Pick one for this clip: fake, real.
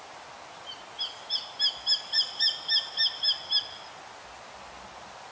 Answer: real